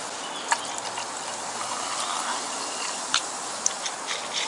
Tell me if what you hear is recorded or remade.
recorded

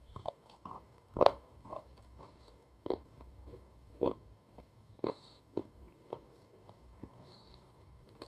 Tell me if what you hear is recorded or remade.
remade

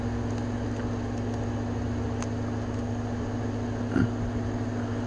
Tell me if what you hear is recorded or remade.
recorded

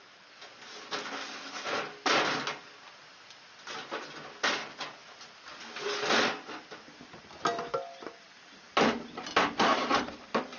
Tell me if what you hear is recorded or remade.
recorded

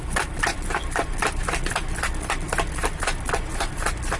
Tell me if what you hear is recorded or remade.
recorded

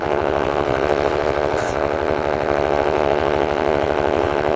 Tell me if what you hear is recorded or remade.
remade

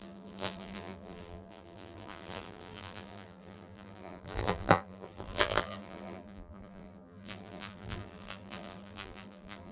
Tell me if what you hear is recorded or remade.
remade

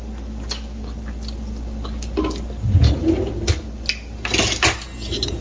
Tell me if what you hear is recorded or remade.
recorded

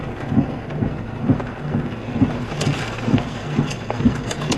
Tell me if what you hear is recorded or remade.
remade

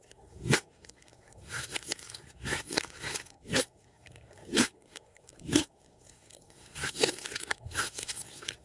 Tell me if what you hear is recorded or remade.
remade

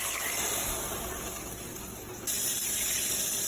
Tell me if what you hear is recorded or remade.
recorded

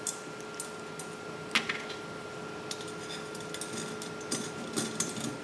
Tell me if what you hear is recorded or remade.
recorded